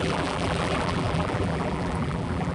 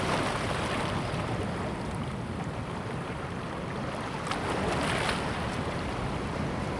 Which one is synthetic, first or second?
first